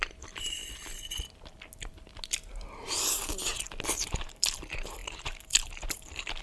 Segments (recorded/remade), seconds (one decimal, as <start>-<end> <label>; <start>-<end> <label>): 0.0-0.6 remade; 0.6-3.9 recorded; 3.9-6.4 remade